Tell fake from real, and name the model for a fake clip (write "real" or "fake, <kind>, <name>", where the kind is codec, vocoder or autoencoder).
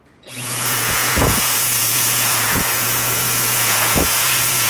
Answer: fake, vocoder, Vocos